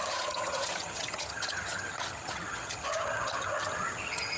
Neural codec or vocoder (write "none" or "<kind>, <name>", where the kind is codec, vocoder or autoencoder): vocoder, HiFi-GAN